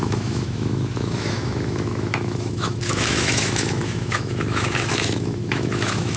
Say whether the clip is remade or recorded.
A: remade